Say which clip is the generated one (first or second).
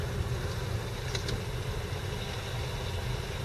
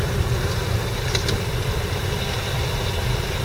second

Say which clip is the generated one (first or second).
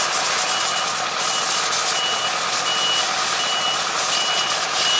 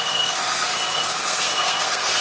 second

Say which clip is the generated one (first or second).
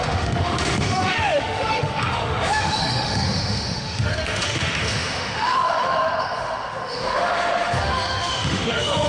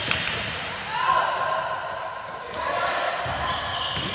first